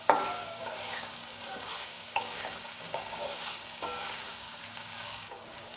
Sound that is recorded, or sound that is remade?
remade